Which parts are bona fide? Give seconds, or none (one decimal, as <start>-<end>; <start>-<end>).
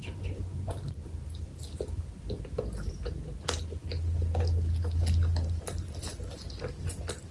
0.0-7.3